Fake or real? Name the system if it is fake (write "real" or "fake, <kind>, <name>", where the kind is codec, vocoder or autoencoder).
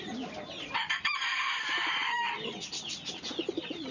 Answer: fake, vocoder, BigVGAN v2